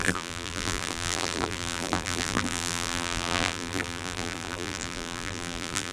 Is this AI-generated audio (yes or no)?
yes